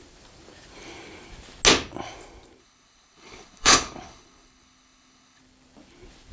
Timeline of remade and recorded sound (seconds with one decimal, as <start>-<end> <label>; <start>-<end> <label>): 0.0-2.6 recorded; 2.6-5.4 remade; 5.4-6.3 recorded